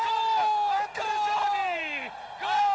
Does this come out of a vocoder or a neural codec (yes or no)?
no